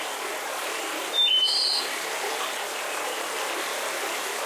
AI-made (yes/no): no